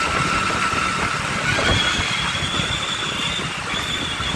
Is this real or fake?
real